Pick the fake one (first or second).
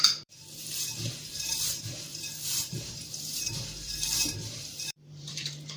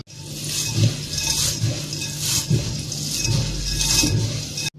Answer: first